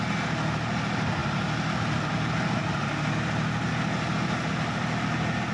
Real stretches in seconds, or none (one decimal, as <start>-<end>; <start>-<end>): 0.0-5.5